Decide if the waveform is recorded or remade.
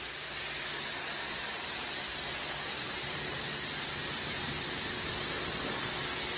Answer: recorded